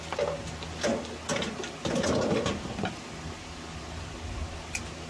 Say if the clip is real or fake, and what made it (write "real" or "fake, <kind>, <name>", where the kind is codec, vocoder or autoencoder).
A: real